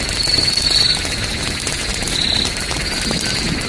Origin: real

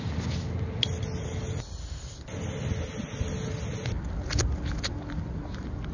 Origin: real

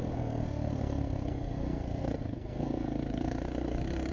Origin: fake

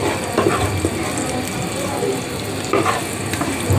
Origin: real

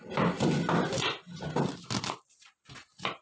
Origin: real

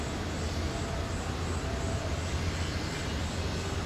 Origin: real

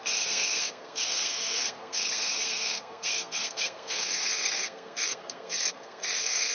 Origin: fake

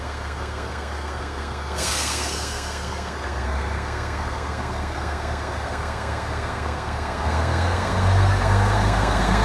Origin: fake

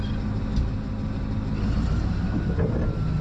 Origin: real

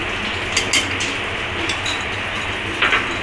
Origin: real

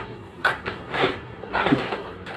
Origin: fake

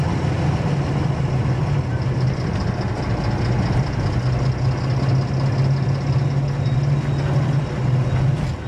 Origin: real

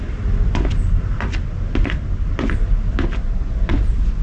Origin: real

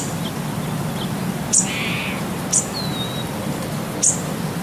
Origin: real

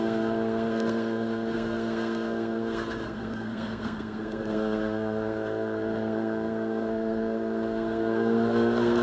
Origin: fake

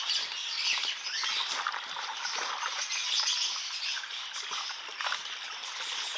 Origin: real